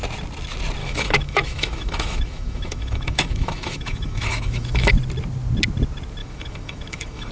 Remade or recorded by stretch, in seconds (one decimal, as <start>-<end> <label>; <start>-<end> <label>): 0.0-0.8 recorded; 0.8-4.9 remade; 4.9-6.2 recorded; 6.2-7.3 remade